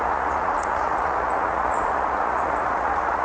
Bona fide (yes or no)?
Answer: no